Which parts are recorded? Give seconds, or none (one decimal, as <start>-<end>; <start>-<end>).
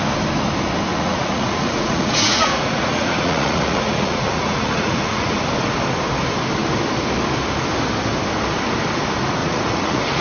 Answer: 0.0-0.9; 5.5-9.4